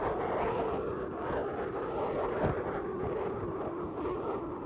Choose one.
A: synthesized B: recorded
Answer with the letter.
B